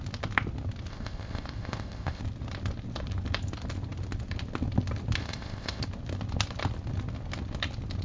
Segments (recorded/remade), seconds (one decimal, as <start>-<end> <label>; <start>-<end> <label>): 0.0-0.9 recorded; 0.9-2.2 remade; 2.2-5.2 recorded; 5.2-5.8 remade; 5.8-8.0 recorded